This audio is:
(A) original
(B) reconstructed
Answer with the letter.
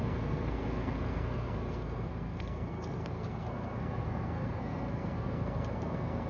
B